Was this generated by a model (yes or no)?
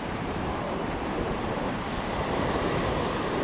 yes